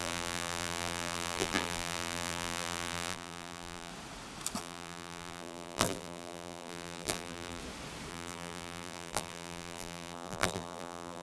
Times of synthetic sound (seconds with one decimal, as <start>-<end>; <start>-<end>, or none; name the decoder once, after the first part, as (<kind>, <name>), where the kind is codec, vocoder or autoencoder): 0.0-3.9 (vocoder, BigVGAN v2); 4.6-7.6; 8.1-11.2